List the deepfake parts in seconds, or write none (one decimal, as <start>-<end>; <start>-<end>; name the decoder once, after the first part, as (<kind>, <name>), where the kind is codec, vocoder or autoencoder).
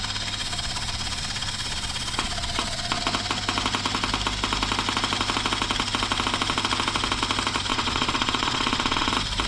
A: 0.4-3.0 (vocoder, Vocos); 7.7-9.1